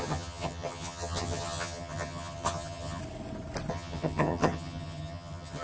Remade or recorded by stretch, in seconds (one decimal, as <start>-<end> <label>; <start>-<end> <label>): 0.0-3.0 remade; 3.0-3.7 recorded; 3.7-5.6 remade